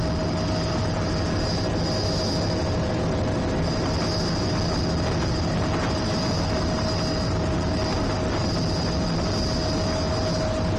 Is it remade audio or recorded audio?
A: recorded